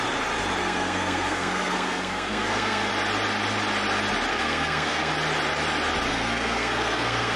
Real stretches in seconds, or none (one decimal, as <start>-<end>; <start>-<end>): 0.0-0.6; 2.9-4.3; 5.1-6.1